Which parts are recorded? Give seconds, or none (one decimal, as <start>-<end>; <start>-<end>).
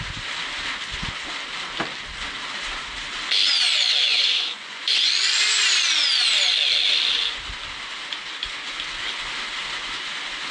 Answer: 0.0-4.1; 5.1-10.5